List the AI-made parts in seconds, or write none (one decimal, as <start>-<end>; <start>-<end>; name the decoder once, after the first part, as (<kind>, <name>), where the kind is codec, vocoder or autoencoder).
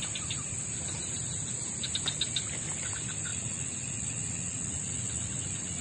3.3-5.8 (vocoder, Vocos)